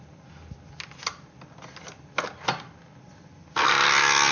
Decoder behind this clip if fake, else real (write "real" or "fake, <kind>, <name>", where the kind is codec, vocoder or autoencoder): real